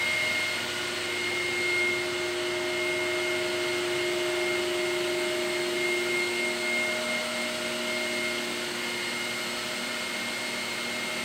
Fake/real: real